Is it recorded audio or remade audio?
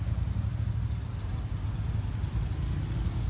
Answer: recorded